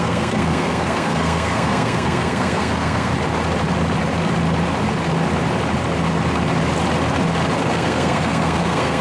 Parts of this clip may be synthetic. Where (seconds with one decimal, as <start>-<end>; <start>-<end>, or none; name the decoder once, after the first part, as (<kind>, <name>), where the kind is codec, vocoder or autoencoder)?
0.0-3.1 (codec, SNAC); 7.7-9.0

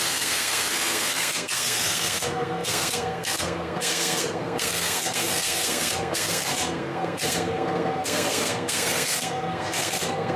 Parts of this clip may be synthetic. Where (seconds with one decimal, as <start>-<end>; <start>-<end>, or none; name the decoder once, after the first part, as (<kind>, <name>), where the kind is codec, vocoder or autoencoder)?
0.0-10.4 (codec, SNAC)